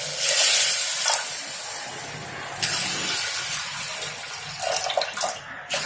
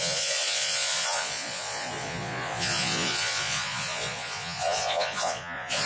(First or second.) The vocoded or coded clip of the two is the second